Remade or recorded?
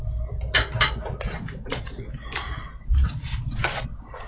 recorded